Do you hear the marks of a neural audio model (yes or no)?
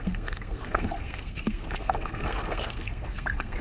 yes